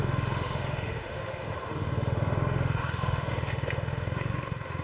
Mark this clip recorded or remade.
remade